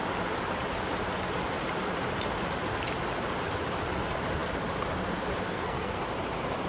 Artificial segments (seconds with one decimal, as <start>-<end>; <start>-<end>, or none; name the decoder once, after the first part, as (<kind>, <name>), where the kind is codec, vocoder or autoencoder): 5.5-6.0 (codec, SNAC)